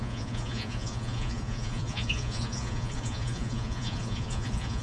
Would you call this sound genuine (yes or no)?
no